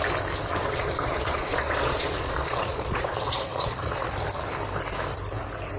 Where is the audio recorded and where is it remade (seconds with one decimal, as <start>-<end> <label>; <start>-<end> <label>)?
0.0-0.6 recorded; 0.6-4.1 remade; 4.1-5.8 recorded